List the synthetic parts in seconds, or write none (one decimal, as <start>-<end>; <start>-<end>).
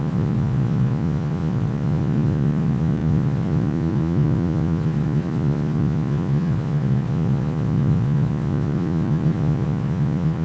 0.0-10.4